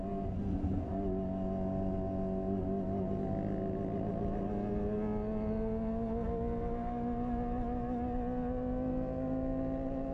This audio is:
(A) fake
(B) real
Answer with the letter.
B